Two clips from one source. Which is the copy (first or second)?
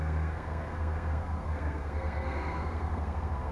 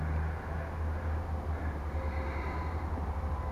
first